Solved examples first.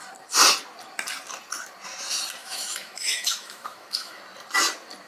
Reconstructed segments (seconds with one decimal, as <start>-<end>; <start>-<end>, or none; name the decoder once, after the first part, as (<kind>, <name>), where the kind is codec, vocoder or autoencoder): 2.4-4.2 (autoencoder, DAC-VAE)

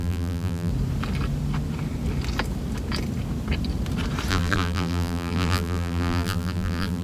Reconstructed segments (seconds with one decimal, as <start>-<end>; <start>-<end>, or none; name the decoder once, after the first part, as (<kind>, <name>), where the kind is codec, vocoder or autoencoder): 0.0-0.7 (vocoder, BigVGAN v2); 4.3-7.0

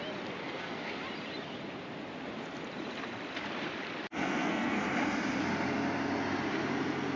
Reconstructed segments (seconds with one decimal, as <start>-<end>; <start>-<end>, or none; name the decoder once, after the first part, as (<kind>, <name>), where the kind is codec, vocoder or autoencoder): 0.4-1.0 (codec, SNAC); 4.2-4.8

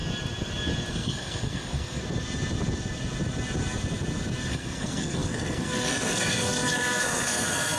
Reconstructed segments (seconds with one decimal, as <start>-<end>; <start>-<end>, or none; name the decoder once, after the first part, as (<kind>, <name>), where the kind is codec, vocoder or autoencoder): 0.9-2.0 (codec, SNAC); 4.5-7.8